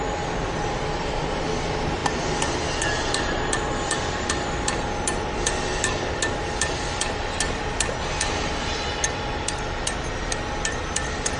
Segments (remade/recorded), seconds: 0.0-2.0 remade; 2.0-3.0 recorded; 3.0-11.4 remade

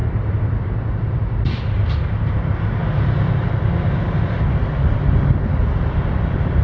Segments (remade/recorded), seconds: 0.0-0.6 recorded; 0.6-2.8 remade; 2.8-4.6 recorded; 4.6-6.6 remade

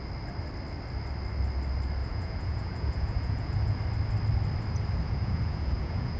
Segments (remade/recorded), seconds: 0.0-2.0 recorded; 2.0-3.8 remade; 3.8-5.0 recorded; 5.0-6.2 remade

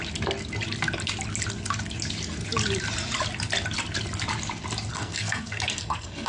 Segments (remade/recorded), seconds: 0.0-4.9 recorded; 4.9-6.3 remade

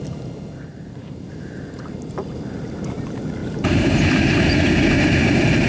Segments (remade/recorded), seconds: 0.0-0.7 recorded; 0.7-1.3 remade; 1.3-3.4 recorded; 3.4-4.5 remade; 4.5-5.7 recorded